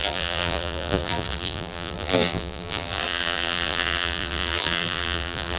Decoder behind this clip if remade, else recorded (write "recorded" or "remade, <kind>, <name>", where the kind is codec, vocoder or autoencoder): remade, vocoder, BigVGAN v2